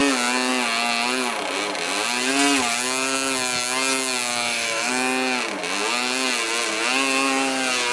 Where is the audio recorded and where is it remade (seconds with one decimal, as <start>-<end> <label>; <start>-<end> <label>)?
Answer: 0.0-4.3 recorded; 4.3-4.9 remade; 4.9-7.9 recorded